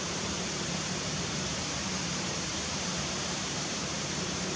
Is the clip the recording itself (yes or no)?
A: no